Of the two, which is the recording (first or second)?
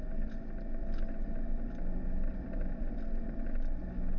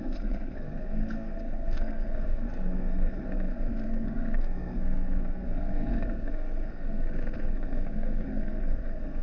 first